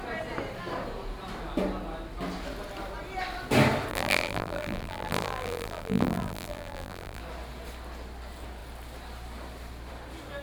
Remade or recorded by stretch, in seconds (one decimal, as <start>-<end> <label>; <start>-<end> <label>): 0.0-3.9 recorded; 3.9-7.2 remade; 7.2-10.4 recorded